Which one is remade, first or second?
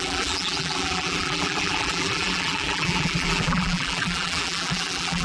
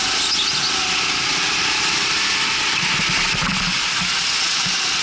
first